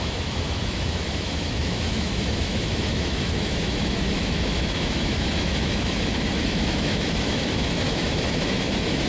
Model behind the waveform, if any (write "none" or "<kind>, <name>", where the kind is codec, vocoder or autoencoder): autoencoder, DAC-VAE